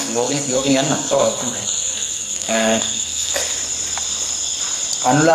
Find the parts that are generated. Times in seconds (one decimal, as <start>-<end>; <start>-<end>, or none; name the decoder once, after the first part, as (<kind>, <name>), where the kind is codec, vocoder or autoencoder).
0.0-3.3 (codec, SNAC)